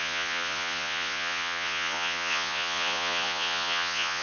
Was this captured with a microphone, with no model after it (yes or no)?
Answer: no